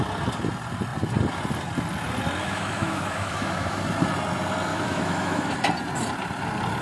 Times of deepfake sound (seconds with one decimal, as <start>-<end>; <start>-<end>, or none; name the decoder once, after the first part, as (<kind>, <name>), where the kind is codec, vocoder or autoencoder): 2.4-3.8 (autoencoder, DAC-VAE); 4.7-5.5